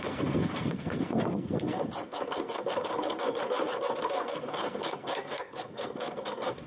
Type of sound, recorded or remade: remade